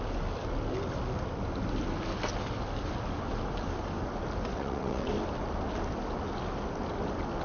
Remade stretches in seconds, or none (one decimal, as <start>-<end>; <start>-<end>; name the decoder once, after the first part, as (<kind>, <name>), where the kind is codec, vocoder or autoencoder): 4.5-5.1 (vocoder, WaveNeXt)